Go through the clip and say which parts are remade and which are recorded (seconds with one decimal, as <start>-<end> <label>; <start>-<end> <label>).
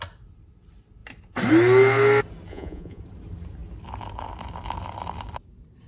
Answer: 0.0-2.5 recorded; 2.5-3.0 remade; 3.0-5.9 recorded